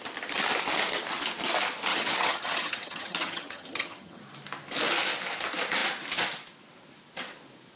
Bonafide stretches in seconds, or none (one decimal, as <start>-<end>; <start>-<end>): 0.0-1.9; 4.2-7.8